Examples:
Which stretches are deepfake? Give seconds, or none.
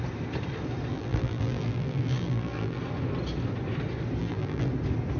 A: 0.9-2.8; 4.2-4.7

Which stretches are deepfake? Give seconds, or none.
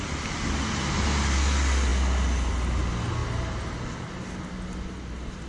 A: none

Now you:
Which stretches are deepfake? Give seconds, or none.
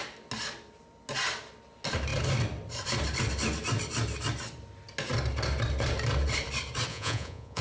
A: 6.9-7.6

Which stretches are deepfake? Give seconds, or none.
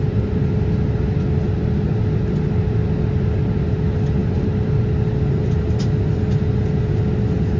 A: none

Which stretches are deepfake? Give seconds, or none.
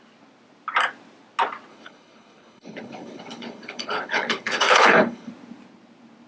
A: 1.7-5.3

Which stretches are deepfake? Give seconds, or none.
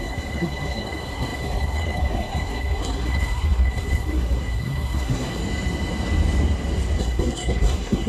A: 0.0-5.4; 7.0-8.1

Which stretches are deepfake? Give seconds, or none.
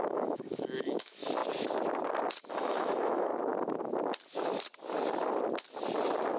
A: 0.0-1.4; 2.4-3.3